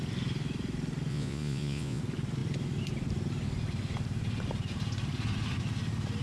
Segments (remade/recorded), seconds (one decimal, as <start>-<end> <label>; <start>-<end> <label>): 0.0-1.1 recorded; 1.1-2.0 remade; 2.0-6.2 recorded